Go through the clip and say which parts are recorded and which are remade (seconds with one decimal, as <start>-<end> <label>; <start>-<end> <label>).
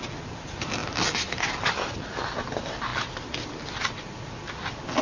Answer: 0.0-5.0 recorded